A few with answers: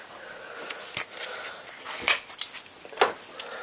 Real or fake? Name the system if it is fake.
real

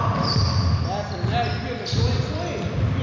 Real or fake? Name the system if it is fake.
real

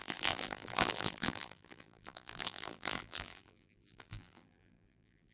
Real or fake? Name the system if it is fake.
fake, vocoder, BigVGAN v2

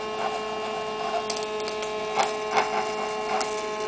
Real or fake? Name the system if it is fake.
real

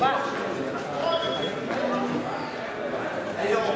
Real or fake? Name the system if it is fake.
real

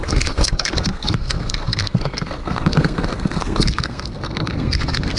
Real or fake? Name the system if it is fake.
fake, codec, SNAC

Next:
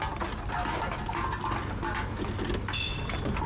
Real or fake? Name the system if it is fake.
real